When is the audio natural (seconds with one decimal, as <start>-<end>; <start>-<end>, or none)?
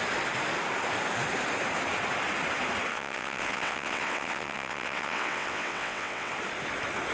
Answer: 0.0-2.9; 6.3-7.1